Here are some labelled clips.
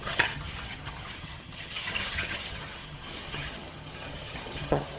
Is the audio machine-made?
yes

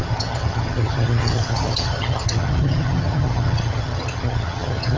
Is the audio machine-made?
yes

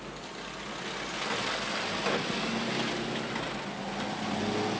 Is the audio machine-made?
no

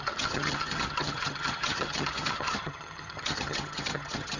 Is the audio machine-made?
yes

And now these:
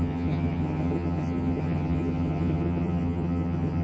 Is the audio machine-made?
yes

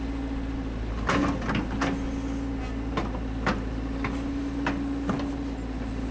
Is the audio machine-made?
no